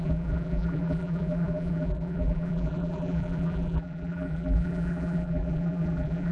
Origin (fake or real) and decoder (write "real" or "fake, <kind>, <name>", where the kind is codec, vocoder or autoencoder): fake, vocoder, BigVGAN v2